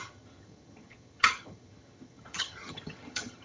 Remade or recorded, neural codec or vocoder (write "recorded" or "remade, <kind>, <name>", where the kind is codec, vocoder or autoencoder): remade, vocoder, HiFi-GAN